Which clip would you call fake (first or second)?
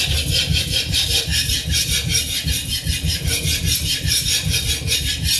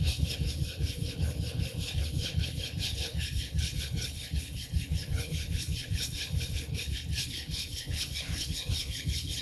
second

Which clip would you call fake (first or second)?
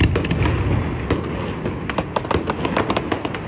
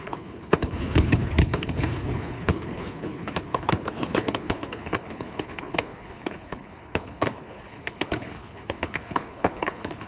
second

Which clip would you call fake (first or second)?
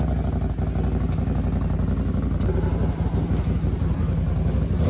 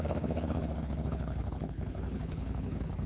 second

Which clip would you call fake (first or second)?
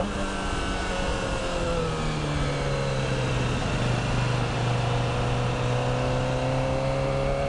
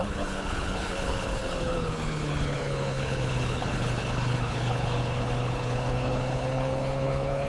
second